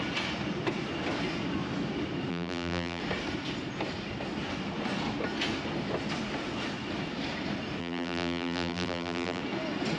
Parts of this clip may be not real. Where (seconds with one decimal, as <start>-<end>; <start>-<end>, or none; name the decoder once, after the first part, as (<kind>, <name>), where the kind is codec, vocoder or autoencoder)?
2.3-3.0 (vocoder, BigVGAN v2); 7.8-9.4